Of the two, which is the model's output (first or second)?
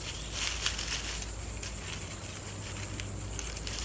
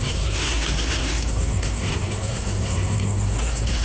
second